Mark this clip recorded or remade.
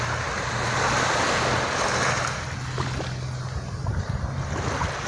recorded